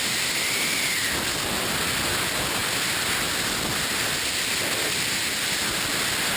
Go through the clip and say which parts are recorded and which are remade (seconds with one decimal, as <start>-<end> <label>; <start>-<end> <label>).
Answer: 0.0-6.4 recorded